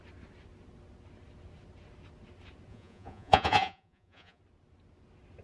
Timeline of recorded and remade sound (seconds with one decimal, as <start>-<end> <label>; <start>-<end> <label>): 0.0-2.7 recorded; 2.7-4.4 remade; 4.4-5.4 recorded